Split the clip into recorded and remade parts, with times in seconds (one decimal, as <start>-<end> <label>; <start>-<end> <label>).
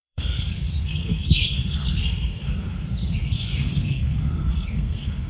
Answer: 0.0-5.3 remade